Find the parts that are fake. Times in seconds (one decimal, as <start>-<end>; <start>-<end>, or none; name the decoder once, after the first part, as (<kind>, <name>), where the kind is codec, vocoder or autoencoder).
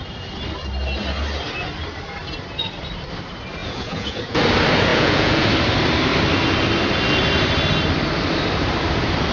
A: 3.6-4.4 (vocoder, Vocos); 4.9-5.5